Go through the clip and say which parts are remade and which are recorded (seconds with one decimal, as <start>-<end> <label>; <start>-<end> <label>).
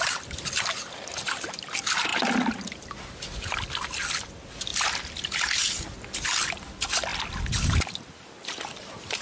0.0-9.2 recorded